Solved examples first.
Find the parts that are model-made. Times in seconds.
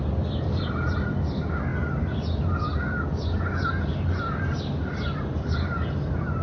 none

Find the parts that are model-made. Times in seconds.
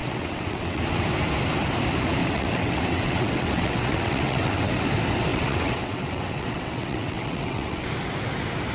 0.0-0.8 (vocoder, WaveNeXt); 2.2-4.8; 5.3-7.9